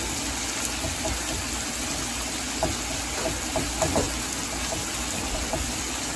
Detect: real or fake real